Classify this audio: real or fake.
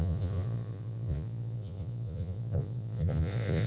fake